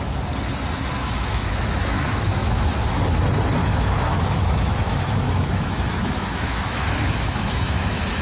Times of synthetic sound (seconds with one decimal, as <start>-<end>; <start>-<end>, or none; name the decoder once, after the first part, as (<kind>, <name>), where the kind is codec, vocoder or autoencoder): 1.0-2.6 (autoencoder, DAC-VAE); 3.6-8.2

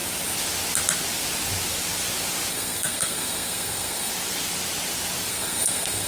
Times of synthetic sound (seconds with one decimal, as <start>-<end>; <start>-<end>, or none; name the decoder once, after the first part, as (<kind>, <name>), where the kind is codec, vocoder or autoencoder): 2.5-4.1 (codec, SNAC); 5.3-6.1

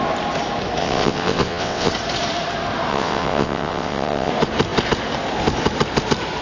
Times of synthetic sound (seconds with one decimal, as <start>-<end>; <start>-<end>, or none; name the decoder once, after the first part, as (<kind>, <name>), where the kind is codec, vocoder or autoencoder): 0.8-1.9 (vocoder, WaveNeXt); 2.9-4.3